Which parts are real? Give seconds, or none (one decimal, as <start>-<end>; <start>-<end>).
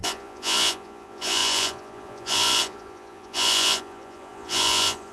none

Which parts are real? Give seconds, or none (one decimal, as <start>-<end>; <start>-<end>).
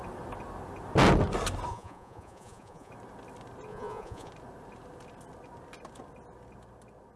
0.0-1.7; 2.9-3.7; 4.3-7.2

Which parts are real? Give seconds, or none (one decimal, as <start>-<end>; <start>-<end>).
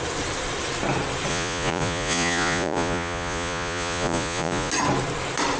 0.0-1.3; 4.7-5.6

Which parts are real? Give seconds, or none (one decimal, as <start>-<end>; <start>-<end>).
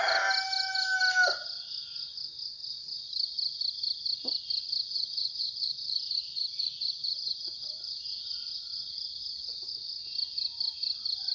0.0-2.6; 3.1-4.9; 9.7-11.3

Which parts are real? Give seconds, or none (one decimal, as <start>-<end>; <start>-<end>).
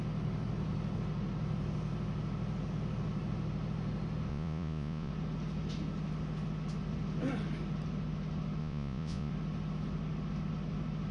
0.0-4.3; 5.1-8.6; 9.3-11.1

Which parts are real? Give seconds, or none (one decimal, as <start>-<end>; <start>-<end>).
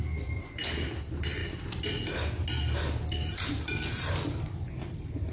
0.0-5.3